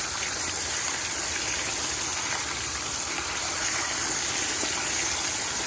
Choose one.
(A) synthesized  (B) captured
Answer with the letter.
B